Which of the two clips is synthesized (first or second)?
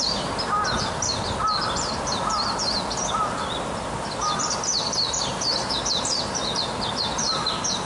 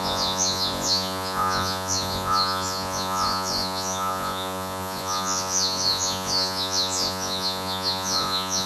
second